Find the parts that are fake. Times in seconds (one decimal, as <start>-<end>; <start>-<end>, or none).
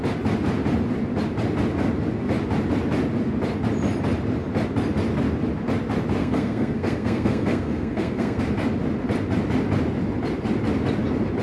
6.2-8.4